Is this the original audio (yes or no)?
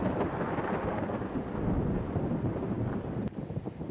yes